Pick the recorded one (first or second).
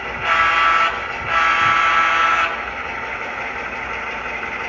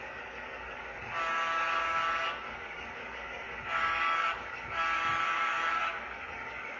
first